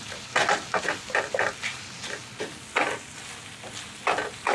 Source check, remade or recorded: recorded